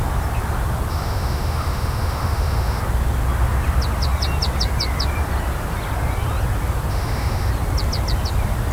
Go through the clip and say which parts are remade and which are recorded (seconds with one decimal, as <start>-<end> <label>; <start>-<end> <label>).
0.0-0.9 recorded; 0.9-2.8 remade; 2.8-6.9 recorded; 6.9-7.5 remade; 7.5-8.7 recorded